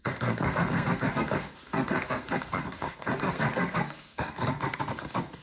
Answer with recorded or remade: remade